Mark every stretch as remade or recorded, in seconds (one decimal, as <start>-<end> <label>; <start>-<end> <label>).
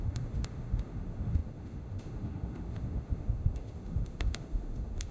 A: 0.0-5.1 remade